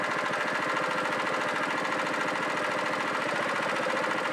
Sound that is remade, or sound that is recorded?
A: recorded